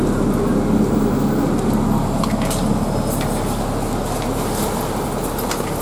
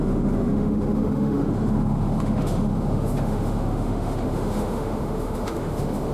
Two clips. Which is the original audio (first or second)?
first